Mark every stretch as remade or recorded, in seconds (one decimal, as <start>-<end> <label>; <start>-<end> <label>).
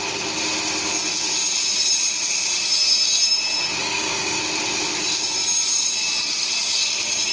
0.0-3.8 recorded; 3.8-4.4 remade; 4.4-7.3 recorded